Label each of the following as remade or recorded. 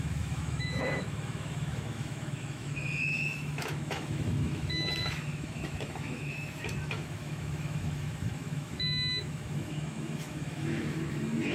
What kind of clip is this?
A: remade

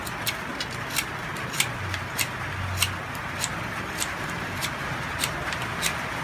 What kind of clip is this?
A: recorded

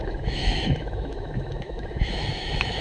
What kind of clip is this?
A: remade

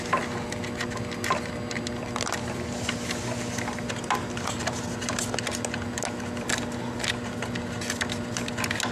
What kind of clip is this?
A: recorded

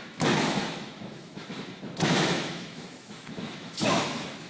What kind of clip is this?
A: remade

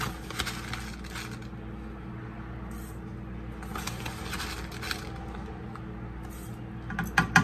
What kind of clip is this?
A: recorded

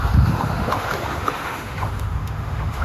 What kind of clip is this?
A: remade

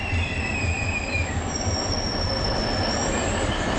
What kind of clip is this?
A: recorded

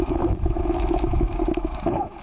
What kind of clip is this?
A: remade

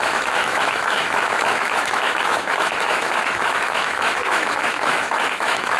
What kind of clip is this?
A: remade